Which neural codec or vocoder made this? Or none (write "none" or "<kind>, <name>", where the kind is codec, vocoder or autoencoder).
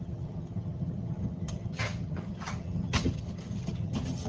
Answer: vocoder, HiFi-GAN